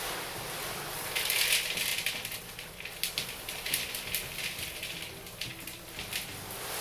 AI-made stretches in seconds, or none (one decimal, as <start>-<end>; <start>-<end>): none